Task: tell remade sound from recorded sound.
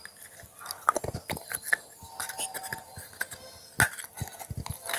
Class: recorded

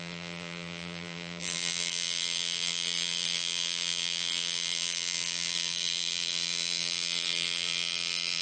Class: remade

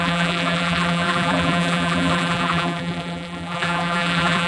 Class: remade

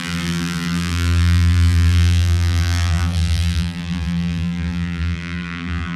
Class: remade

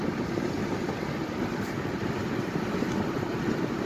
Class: recorded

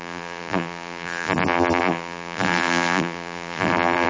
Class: remade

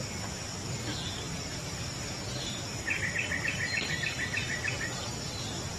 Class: recorded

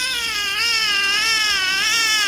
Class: recorded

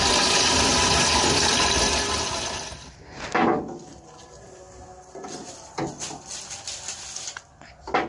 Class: recorded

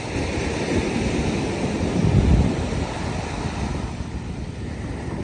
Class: remade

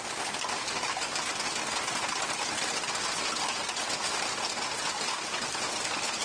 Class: recorded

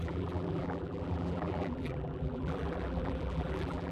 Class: remade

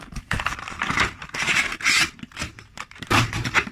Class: remade